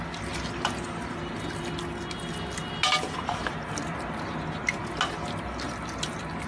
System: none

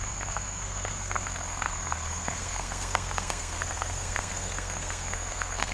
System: codec, SNAC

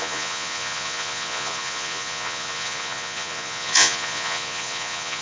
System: vocoder, Vocos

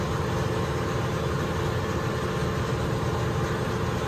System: none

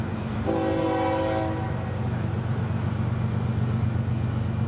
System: none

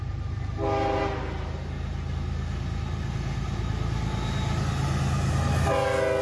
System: none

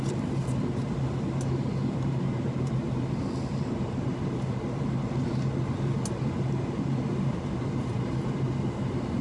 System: none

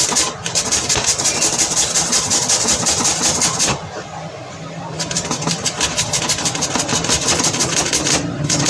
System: none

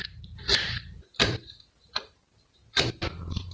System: vocoder, BigVGAN v2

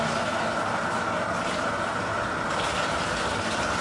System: none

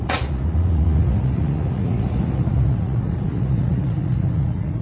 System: vocoder, Vocos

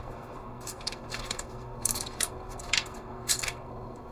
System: codec, SNAC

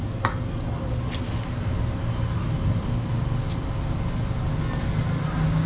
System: none